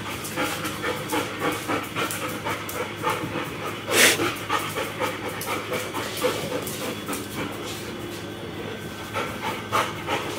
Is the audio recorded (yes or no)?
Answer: no